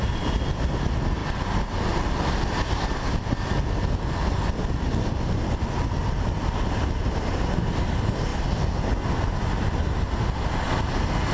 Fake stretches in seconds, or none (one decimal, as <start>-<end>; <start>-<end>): none